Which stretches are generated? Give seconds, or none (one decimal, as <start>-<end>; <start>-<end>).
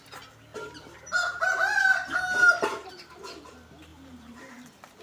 0.5-3.5; 3.9-4.5